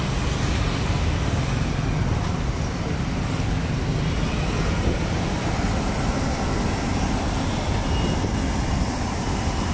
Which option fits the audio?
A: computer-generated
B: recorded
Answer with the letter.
B